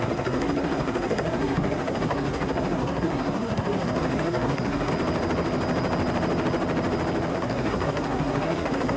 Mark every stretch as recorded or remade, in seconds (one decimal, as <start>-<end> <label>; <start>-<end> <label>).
0.0-4.9 remade; 4.9-7.3 recorded; 7.3-9.0 remade